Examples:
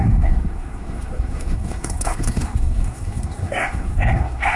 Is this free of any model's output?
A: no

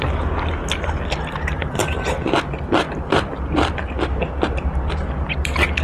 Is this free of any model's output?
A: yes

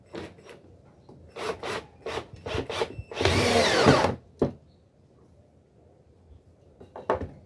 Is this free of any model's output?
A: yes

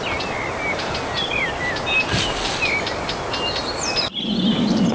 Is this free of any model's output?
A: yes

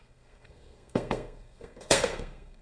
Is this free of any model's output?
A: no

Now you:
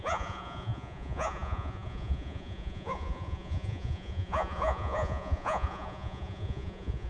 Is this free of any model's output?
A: no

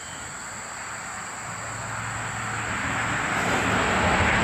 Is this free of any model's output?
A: yes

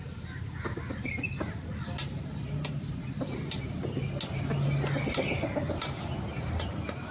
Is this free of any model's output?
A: yes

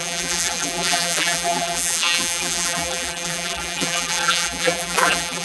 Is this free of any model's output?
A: no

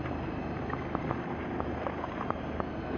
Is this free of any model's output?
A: yes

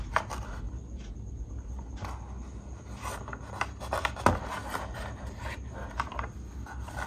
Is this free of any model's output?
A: yes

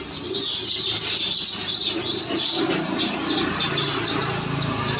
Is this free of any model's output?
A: yes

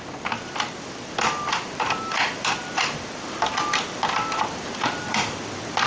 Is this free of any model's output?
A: no